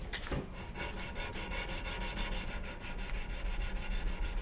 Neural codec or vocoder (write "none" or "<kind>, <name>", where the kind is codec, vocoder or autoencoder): none